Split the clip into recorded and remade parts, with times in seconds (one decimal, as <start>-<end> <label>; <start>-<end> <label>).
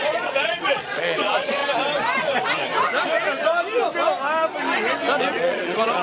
0.0-1.6 remade; 1.6-5.2 recorded; 5.2-6.0 remade